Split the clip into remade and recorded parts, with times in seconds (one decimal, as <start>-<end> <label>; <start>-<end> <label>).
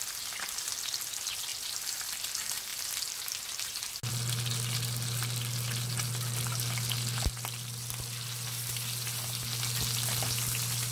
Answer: 0.0-1.5 recorded; 1.5-2.1 remade; 2.1-10.9 recorded